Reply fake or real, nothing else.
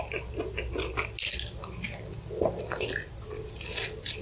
real